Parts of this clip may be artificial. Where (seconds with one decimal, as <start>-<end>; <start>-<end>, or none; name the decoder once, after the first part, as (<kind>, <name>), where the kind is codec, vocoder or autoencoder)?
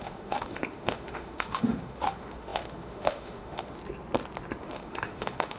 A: 0.0-3.8 (autoencoder, DAC-VAE); 4.6-5.6